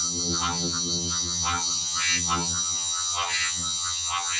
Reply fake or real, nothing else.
fake